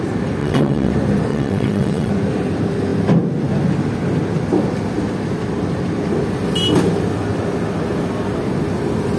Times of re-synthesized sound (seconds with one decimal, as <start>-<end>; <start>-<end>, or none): 0.4-0.9; 1.3-2.1